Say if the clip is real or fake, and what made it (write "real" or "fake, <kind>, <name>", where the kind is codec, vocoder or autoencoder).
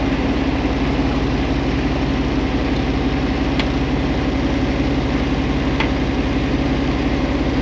real